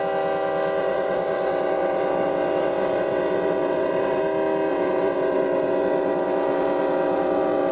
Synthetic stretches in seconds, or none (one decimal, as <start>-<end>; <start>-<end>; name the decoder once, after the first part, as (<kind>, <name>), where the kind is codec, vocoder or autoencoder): 0.8-4.2 (vocoder, WaveNeXt); 4.7-7.7